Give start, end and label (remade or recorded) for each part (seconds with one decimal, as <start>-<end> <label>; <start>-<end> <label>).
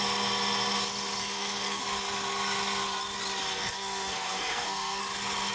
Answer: 0.0-1.2 recorded; 1.2-1.8 remade; 1.8-3.5 recorded; 3.5-5.0 remade; 5.0-5.5 recorded